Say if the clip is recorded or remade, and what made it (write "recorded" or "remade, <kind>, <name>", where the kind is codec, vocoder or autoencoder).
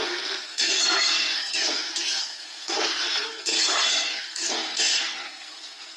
remade, codec, SNAC